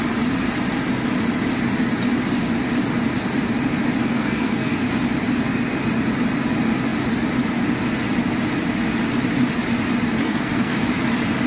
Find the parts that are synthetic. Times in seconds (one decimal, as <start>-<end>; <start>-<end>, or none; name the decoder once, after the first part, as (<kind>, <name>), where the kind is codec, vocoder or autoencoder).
4.1-4.9 (codec, SNAC); 10.2-10.8